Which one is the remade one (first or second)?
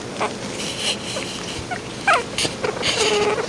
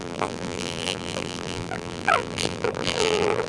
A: second